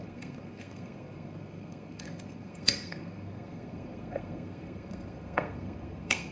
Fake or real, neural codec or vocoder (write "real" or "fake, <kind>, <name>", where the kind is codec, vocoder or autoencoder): fake, codec, SNAC